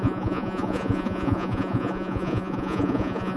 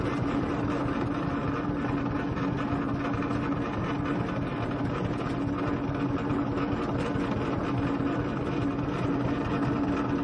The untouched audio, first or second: second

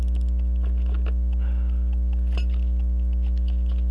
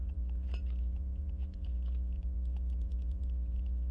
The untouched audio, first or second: first